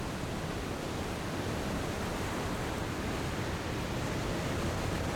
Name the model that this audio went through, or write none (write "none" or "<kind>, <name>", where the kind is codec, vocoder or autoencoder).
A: vocoder, BigVGAN v2